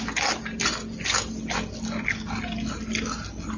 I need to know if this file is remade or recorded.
recorded